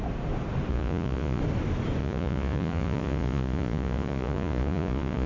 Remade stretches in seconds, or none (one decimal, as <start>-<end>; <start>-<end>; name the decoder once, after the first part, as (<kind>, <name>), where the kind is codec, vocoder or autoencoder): 0.7-1.4 (vocoder, Vocos); 2.0-5.3